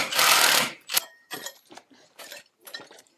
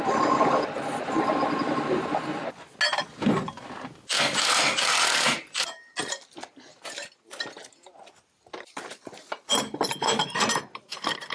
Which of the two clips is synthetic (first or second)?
first